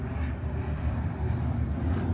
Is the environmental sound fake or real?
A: real